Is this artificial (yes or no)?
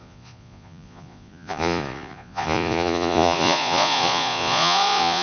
yes